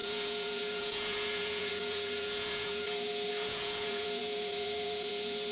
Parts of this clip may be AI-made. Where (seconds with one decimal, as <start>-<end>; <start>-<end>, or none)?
0.0-5.5